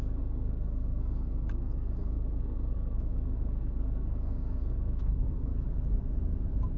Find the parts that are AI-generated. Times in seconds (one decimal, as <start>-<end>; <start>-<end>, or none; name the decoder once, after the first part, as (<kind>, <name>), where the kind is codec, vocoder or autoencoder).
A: 0.0-5.5 (codec, SNAC)